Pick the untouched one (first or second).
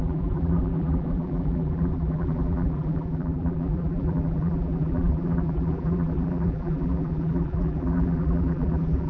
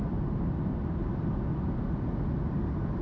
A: second